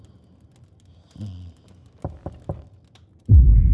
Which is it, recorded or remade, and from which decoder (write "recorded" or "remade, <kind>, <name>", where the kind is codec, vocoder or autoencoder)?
recorded